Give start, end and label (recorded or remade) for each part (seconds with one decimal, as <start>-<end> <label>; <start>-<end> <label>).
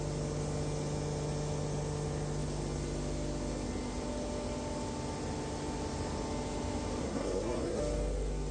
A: 0.0-7.0 recorded; 7.0-7.8 remade; 7.8-8.5 recorded